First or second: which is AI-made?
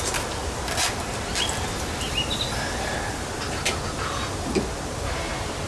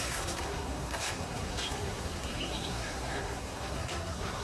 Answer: second